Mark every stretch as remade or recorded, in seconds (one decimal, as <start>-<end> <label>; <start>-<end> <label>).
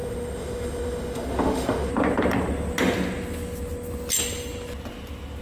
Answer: 0.0-1.9 remade; 1.9-5.4 recorded